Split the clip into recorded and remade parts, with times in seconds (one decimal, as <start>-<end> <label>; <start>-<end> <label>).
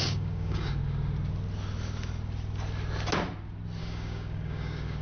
0.0-0.8 remade; 0.8-3.8 recorded; 3.8-5.0 remade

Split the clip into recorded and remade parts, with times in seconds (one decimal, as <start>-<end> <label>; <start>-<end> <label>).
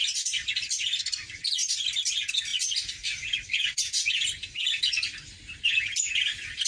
0.0-6.7 recorded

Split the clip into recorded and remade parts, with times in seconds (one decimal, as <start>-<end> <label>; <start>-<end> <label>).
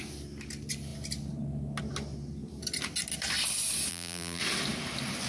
0.0-3.9 recorded; 3.9-4.4 remade; 4.4-5.3 recorded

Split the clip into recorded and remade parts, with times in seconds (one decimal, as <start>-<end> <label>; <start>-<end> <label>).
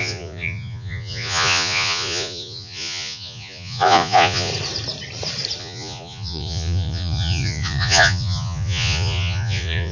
0.0-4.5 remade; 4.5-5.6 recorded; 5.6-9.9 remade